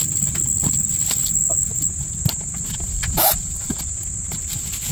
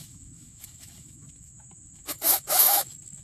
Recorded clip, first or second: first